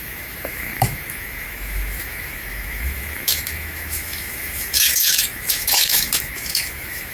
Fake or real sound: fake